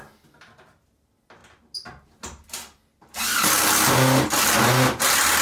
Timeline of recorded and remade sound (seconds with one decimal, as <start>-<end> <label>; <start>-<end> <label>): 0.0-5.4 recorded